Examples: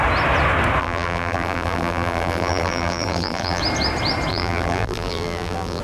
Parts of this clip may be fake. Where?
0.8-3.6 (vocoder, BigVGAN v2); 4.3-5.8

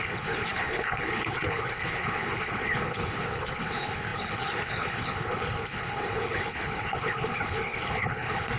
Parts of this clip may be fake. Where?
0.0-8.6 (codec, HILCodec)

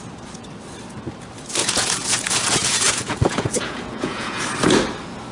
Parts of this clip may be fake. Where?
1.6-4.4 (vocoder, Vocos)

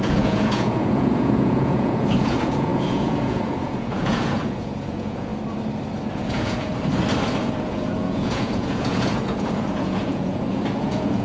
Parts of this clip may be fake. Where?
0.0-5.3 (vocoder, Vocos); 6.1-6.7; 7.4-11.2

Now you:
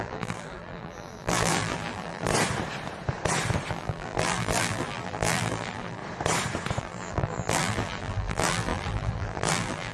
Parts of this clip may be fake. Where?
0.0-2.3 (vocoder, BigVGAN v2); 3.7-6.0; 6.8-9.9

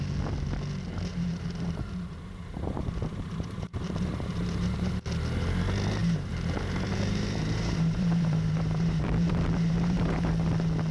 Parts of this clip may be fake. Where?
1.1-4.9 (vocoder, BigVGAN v2); 6.0-10.3

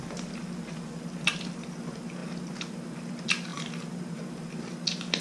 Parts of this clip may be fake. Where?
none